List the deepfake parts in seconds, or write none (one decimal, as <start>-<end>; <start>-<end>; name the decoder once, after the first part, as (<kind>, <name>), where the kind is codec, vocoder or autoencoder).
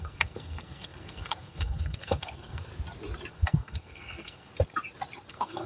0.0-2.7 (codec, SNAC); 3.3-4.5; 5.3-5.7